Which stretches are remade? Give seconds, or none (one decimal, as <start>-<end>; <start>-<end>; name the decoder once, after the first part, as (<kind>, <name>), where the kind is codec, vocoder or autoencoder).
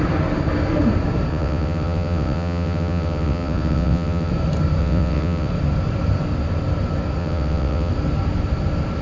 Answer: 1.3-4.3 (vocoder, WaveNeXt); 4.8-5.5; 7.2-7.9